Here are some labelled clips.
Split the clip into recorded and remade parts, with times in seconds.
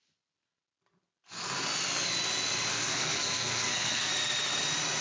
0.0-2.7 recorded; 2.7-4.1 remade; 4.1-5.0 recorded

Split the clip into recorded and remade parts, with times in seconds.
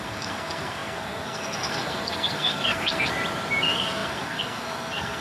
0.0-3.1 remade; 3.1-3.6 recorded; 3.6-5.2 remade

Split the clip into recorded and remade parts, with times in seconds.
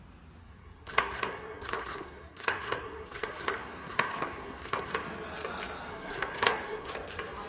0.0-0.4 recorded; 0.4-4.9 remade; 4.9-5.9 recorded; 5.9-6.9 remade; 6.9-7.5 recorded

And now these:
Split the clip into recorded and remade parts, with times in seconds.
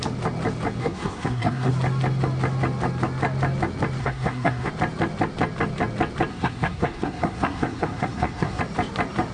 0.0-0.8 recorded; 0.8-1.7 remade; 1.7-4.0 recorded; 4.0-4.7 remade; 4.7-6.3 recorded; 6.3-8.6 remade; 8.6-9.3 recorded